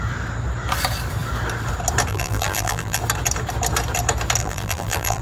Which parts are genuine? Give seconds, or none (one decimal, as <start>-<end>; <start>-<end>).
0.0-2.1; 3.0-4.4